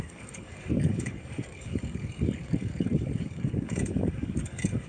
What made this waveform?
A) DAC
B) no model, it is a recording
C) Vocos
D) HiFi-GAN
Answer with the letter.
A